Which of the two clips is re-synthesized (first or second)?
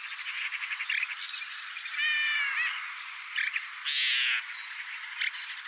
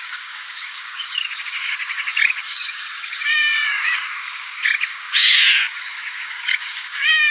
second